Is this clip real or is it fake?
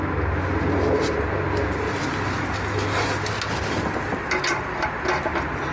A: real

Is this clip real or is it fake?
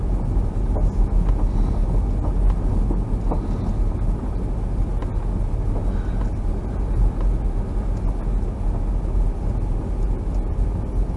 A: real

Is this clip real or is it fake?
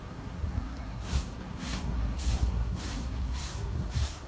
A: fake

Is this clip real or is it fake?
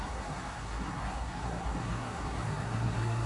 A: fake